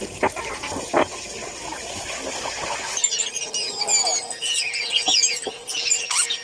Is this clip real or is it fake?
real